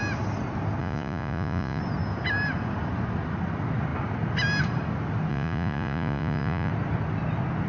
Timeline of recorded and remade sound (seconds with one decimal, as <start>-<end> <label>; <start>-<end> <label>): 0.0-0.8 recorded; 0.8-1.8 remade; 1.8-5.3 recorded; 5.3-6.7 remade; 6.7-7.7 recorded